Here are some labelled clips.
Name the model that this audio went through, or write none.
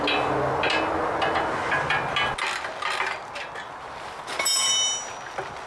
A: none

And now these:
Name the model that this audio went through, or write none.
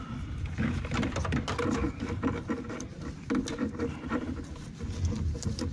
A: none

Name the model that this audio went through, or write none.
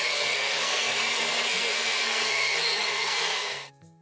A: codec, SNAC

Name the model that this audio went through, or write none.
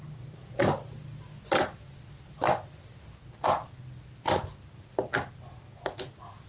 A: none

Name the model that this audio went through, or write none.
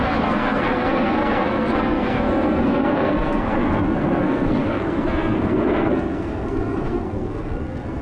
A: codec, SNAC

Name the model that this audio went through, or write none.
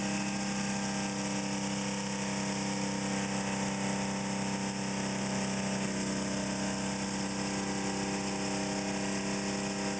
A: none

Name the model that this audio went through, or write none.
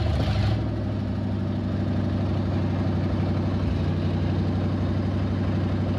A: none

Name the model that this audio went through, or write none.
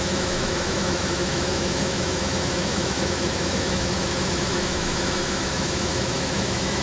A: autoencoder, DAC-VAE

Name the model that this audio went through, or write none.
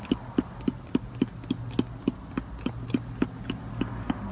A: none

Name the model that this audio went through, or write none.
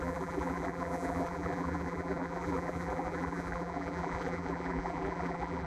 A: vocoder, BigVGAN v2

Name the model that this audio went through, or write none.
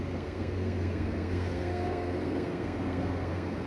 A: codec, SNAC